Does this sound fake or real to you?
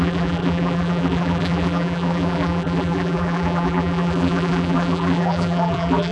fake